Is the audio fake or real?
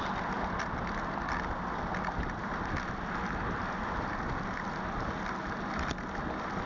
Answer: real